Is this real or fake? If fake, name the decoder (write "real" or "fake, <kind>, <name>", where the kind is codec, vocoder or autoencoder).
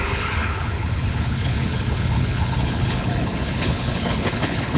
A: fake, codec, HILCodec